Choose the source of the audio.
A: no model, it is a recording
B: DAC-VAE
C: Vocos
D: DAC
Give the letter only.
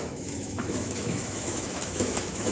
B